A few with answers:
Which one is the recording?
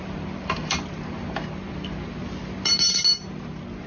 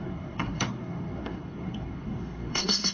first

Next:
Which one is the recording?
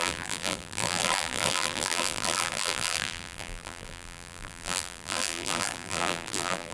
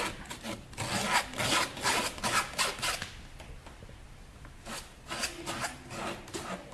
second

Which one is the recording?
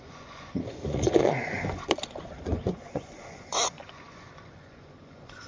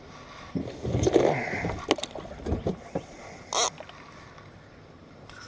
second